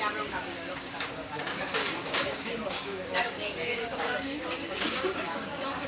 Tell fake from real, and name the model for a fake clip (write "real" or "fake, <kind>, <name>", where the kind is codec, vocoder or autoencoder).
fake, codec, DAC